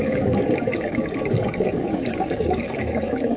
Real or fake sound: fake